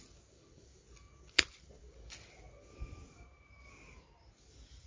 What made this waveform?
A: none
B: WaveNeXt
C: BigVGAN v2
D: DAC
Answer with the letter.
A